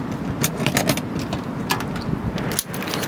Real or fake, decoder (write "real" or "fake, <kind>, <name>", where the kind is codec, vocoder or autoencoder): real